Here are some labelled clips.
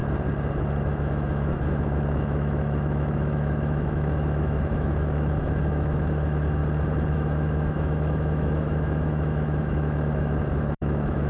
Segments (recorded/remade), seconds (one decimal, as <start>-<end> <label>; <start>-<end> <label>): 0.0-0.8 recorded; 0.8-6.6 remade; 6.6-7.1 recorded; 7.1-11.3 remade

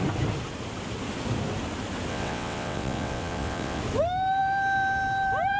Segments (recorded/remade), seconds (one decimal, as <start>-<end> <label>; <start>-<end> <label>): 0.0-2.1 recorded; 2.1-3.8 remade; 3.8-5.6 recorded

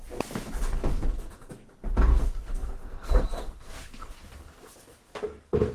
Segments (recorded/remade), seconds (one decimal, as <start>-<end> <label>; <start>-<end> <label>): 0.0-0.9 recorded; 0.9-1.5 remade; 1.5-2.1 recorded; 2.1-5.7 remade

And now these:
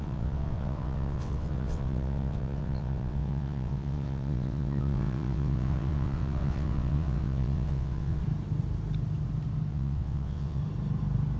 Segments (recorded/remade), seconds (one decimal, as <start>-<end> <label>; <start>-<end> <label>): 0.0-8.2 remade; 8.2-9.7 recorded; 9.7-10.6 remade; 10.6-11.4 recorded